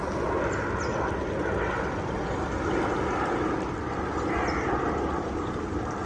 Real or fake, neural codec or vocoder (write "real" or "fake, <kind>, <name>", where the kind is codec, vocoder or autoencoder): real